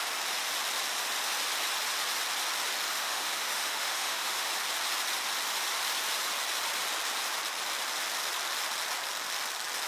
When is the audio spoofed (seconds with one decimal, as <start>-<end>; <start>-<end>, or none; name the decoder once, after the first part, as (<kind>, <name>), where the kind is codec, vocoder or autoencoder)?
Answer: 2.9-4.5 (autoencoder, DAC-VAE)